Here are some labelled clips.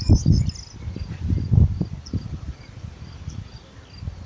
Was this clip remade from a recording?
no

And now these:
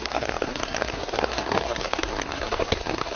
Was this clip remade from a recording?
yes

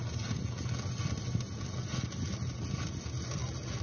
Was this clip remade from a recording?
no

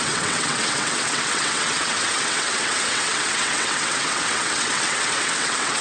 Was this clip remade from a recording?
yes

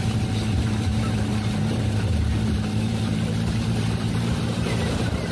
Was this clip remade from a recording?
yes